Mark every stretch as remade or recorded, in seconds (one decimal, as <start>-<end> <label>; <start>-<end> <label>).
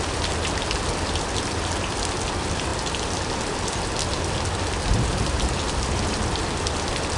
0.0-7.2 recorded